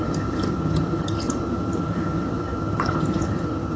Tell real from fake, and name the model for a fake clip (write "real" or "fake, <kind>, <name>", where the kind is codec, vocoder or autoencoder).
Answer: fake, vocoder, HiFi-GAN